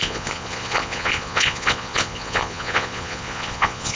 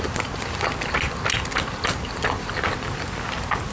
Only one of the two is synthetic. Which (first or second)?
first